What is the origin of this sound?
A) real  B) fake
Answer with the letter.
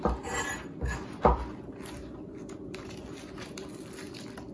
A